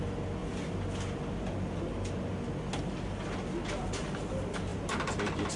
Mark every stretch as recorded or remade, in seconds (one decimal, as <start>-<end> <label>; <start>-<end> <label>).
0.0-4.7 recorded; 4.7-5.6 remade